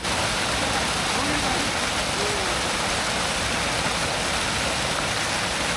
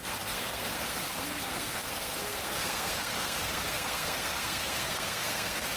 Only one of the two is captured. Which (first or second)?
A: first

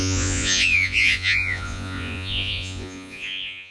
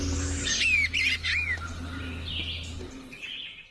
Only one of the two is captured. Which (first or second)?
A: second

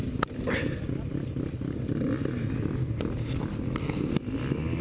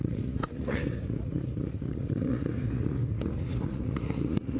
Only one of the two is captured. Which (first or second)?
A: first